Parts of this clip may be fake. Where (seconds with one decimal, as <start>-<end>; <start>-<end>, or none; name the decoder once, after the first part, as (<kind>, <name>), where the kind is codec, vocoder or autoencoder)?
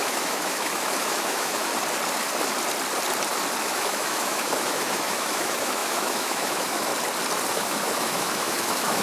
0.0-1.7 (autoencoder, DAC-VAE); 3.6-6.9; 7.5-9.0